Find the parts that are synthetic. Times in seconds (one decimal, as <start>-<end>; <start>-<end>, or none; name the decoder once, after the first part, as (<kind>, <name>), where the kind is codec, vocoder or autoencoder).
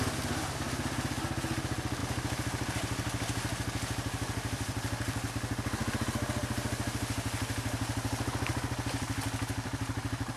2.0-5.3 (vocoder, BigVGAN v2); 8.5-10.4